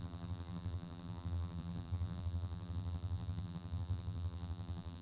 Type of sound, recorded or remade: remade